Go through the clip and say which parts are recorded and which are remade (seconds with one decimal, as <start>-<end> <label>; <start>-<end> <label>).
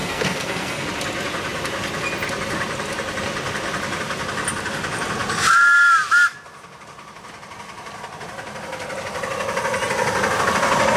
0.0-0.9 remade; 0.9-11.0 recorded